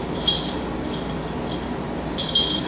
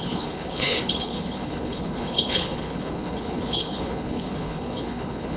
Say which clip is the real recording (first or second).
first